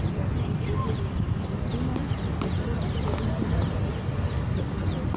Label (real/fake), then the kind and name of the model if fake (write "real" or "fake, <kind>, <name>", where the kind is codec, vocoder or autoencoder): real